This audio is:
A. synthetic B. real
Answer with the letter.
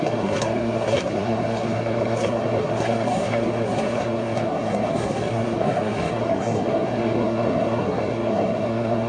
A